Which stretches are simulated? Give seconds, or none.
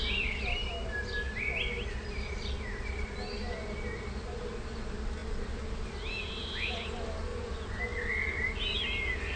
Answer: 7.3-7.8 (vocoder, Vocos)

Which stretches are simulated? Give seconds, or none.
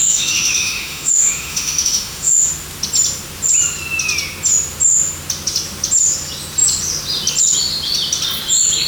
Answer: 0.0-2.5 (autoencoder, DAC-VAE)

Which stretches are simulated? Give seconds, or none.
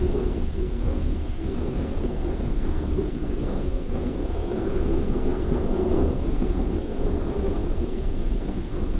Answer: 0.0-9.0 (codec, SNAC)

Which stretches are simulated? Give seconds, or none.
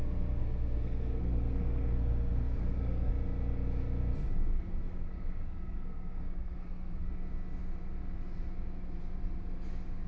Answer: 0.4-3.1 (codec, SNAC); 4.5-7.1